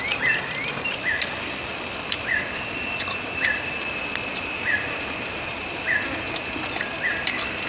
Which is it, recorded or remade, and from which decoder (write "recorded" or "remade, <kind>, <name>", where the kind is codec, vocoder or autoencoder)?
remade, vocoder, BigVGAN v2